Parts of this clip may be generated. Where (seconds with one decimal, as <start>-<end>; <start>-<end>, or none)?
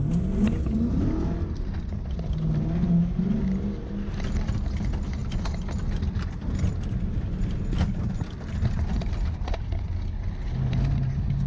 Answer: none